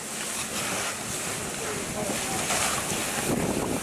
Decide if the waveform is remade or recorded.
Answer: recorded